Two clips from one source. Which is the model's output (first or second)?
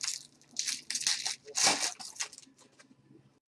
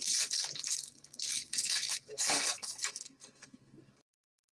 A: second